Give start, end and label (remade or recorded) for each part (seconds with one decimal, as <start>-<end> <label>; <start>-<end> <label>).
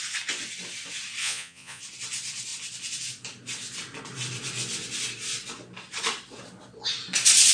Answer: 0.0-1.2 recorded; 1.2-1.8 remade; 1.8-7.5 recorded